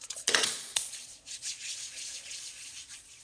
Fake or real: fake